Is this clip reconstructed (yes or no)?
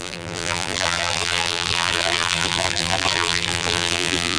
yes